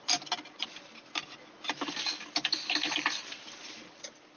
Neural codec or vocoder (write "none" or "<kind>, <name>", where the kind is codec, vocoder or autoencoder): none